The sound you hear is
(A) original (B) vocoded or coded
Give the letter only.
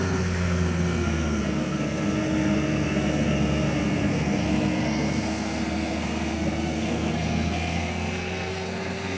B